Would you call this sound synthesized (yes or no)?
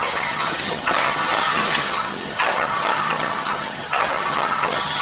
yes